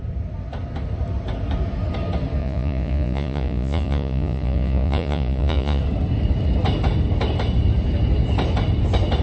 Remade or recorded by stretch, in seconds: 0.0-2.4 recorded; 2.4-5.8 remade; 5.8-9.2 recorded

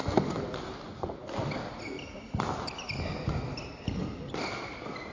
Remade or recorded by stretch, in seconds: 0.0-5.1 recorded

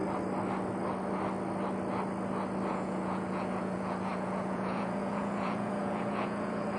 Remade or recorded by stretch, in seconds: 0.0-2.7 recorded; 2.7-6.8 remade

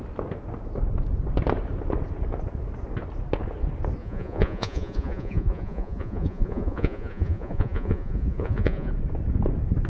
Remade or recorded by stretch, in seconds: 0.0-4.0 recorded; 4.0-8.9 remade; 8.9-9.9 recorded

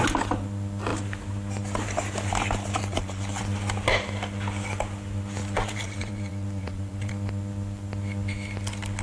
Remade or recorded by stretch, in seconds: 0.0-2.8 recorded; 2.8-3.4 remade; 3.4-5.4 recorded; 5.4-7.1 remade; 7.1-9.0 recorded